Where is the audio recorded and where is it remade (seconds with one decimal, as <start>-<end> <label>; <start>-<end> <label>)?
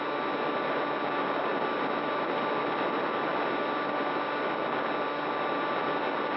0.0-6.4 recorded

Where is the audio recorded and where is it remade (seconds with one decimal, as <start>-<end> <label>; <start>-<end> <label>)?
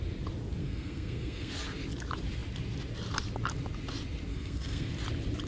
0.0-0.6 recorded; 0.6-1.5 remade; 1.5-4.3 recorded; 4.3-4.9 remade; 4.9-5.5 recorded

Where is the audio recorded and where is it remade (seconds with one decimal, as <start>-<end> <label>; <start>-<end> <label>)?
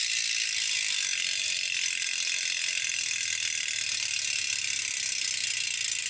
0.0-6.1 recorded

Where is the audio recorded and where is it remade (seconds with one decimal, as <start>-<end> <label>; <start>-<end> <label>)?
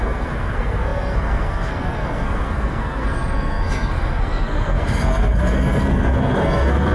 0.0-6.9 remade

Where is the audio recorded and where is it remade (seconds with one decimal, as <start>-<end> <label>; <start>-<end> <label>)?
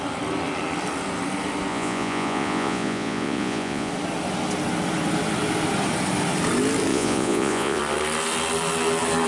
0.0-1.7 recorded; 1.7-3.9 remade; 3.9-6.9 recorded; 6.9-7.8 remade; 7.8-9.3 recorded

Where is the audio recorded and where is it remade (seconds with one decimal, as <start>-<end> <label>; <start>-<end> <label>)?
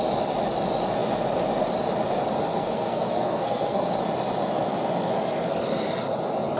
0.0-2.5 recorded; 2.5-3.9 remade; 3.9-6.6 recorded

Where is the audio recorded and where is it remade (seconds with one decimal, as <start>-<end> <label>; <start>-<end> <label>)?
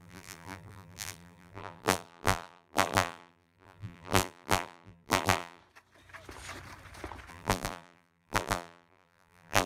0.0-5.6 remade; 5.6-7.3 recorded; 7.3-9.7 remade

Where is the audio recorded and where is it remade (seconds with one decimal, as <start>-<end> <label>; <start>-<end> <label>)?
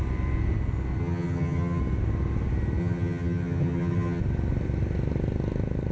0.0-1.0 recorded; 1.0-1.8 remade; 1.8-2.8 recorded; 2.8-4.2 remade; 4.2-5.9 recorded